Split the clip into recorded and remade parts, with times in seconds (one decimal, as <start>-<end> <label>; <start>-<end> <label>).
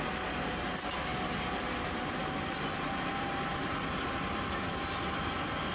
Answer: 0.0-2.2 recorded; 2.2-5.7 remade